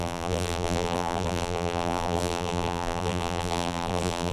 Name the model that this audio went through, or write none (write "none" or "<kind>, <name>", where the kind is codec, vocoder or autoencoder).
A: vocoder, BigVGAN v2